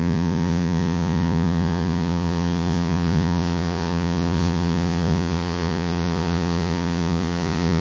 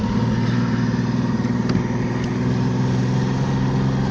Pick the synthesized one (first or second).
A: first